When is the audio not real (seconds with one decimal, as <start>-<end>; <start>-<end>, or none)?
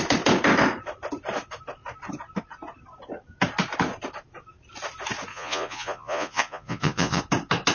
5.3-7.2